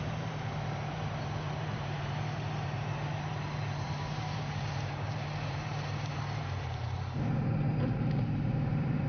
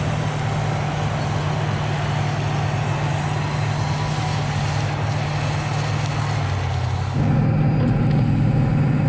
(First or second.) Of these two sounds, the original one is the second